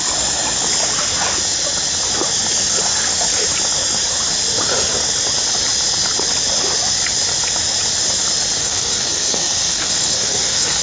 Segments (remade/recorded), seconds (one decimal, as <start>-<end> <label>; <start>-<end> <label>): 0.0-8.6 recorded; 8.6-10.8 remade

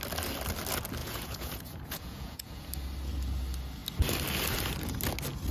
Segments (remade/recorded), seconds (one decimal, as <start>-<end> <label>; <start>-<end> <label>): 0.0-1.0 recorded; 1.0-2.7 remade; 2.7-5.5 recorded

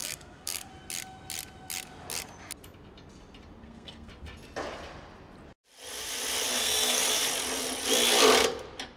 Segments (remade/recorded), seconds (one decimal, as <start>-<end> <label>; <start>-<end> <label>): 0.0-0.7 remade; 0.7-3.6 recorded; 3.6-4.1 remade; 4.1-6.6 recorded; 6.6-7.1 remade; 7.1-9.0 recorded

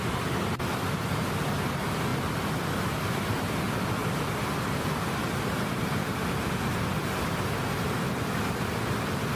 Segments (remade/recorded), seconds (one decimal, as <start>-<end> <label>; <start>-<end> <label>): 0.0-4.0 recorded; 4.0-6.6 remade; 6.6-9.4 recorded

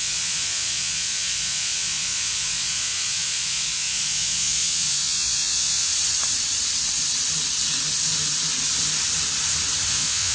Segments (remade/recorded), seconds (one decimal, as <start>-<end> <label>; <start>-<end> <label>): 0.0-5.9 remade; 5.9-9.9 recorded; 9.9-10.3 remade

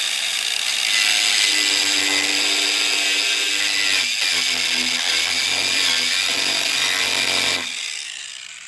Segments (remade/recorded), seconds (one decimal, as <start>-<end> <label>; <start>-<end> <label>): 0.0-8.7 recorded

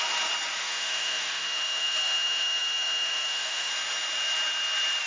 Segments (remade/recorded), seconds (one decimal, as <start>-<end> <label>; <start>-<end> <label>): 0.0-0.6 recorded; 0.6-3.7 remade; 3.7-5.1 recorded